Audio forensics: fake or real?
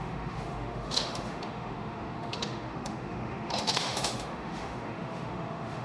fake